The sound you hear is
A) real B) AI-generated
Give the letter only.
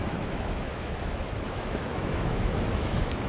B